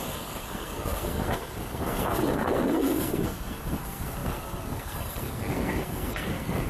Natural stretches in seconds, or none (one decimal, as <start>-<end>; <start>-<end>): none